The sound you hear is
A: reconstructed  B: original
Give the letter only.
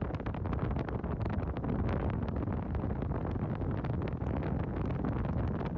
B